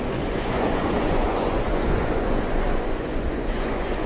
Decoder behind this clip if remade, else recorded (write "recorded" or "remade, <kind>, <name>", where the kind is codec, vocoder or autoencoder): remade, vocoder, Vocos